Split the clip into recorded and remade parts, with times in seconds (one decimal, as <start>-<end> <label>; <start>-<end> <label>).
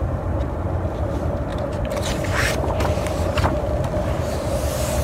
0.0-1.5 recorded; 1.5-3.5 remade; 3.5-5.0 recorded